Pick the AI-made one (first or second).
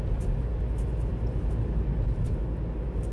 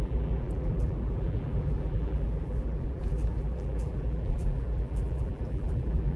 second